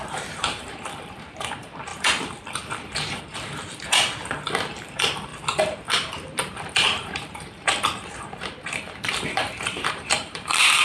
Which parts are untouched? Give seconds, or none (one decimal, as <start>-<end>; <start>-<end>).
none